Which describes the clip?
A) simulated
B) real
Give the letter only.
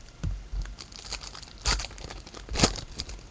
B